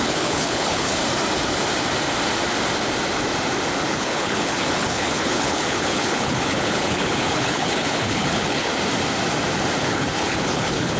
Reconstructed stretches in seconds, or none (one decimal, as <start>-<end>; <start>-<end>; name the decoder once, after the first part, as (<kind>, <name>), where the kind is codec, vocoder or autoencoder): 0.0-1.0 (codec, HILCodec); 3.9-8.7; 9.8-11.0